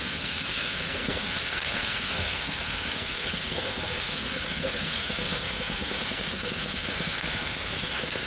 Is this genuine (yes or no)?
no